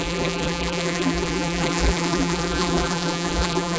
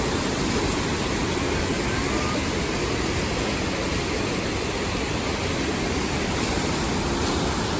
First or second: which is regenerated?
first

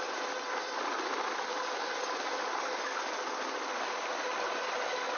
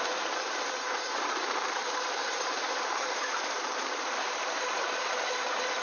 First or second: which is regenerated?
second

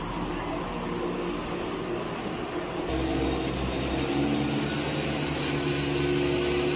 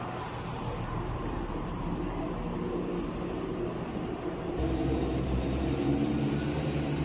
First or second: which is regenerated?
second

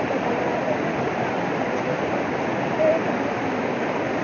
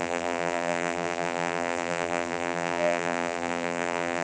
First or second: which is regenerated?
second